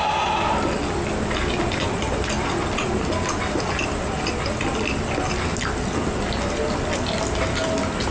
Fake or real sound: real